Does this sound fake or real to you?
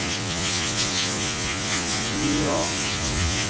fake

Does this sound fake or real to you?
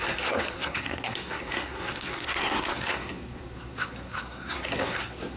fake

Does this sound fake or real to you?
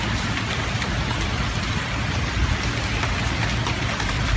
real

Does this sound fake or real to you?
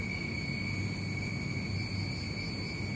real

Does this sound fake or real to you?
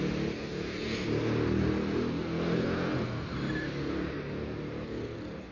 real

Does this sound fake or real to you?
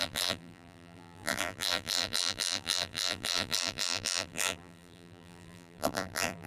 fake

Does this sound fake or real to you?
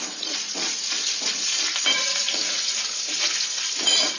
fake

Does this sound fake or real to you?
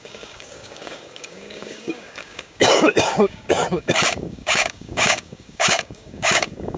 fake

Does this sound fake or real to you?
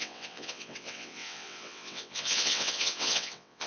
fake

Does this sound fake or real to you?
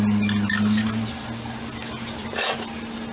real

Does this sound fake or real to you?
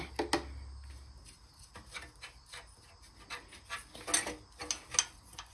real